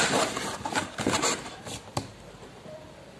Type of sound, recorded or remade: recorded